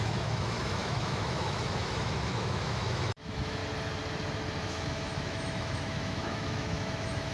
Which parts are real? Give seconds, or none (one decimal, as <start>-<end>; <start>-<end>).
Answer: 3.6-4.6